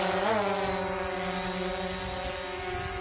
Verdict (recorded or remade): recorded